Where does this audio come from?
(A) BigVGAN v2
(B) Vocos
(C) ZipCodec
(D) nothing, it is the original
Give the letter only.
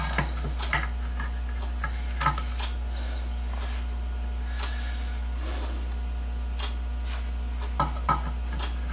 D